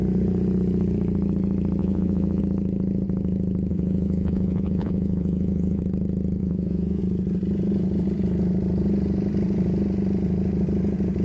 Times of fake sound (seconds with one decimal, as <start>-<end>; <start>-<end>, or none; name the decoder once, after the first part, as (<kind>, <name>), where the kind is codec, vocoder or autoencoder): 1.8-2.4 (vocoder, Vocos); 3.7-5.8; 6.4-7.0